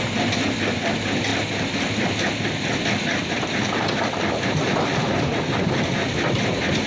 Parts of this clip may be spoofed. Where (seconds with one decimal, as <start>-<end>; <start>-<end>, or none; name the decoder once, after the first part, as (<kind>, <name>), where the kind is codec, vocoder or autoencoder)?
none